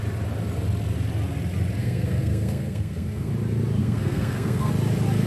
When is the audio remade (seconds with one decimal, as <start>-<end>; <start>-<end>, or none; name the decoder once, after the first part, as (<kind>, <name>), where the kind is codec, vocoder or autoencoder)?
1.8-3.3 (codec, SNAC); 3.8-4.7